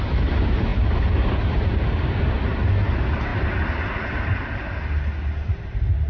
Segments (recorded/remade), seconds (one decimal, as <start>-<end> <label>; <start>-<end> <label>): 0.0-6.1 recorded